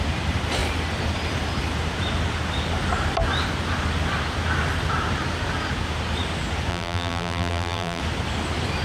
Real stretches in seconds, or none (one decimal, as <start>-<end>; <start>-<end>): 0.0-6.7; 8.0-8.8